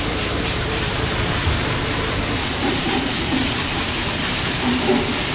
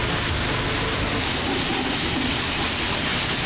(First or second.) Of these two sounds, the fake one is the first